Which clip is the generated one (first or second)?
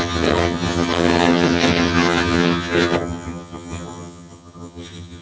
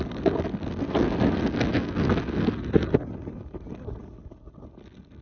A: first